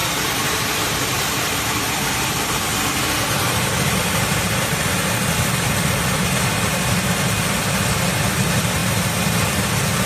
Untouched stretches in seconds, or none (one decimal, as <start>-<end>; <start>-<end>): 0.0-10.1